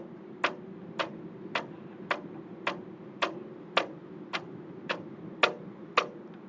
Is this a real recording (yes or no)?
yes